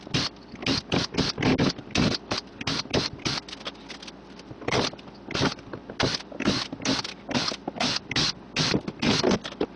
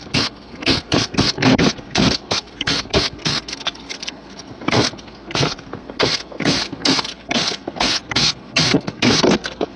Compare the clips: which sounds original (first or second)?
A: first